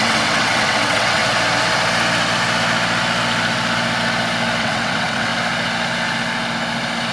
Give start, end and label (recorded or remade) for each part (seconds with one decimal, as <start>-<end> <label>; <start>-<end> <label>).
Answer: 0.0-1.2 remade; 1.2-4.6 recorded; 4.6-5.3 remade; 5.3-7.1 recorded